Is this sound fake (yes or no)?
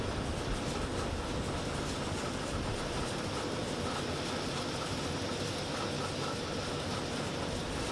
no